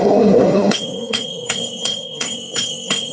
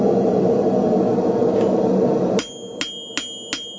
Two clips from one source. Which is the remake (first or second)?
first